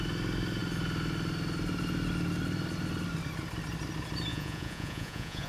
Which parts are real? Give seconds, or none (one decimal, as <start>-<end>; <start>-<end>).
0.0-4.3